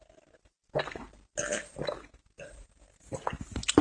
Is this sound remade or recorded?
recorded